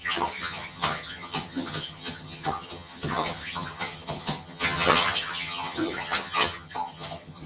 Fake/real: fake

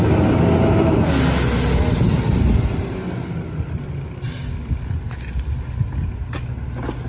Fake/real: real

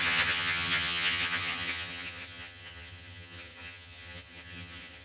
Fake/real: fake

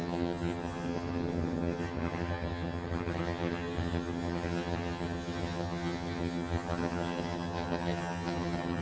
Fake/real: fake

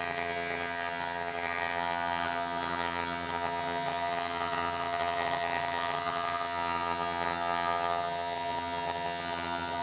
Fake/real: fake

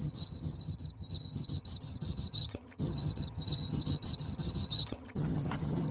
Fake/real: fake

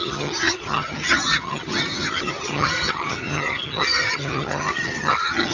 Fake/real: fake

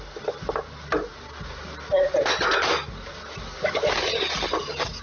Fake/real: real